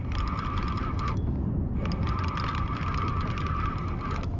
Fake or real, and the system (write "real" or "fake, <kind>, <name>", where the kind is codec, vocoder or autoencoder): real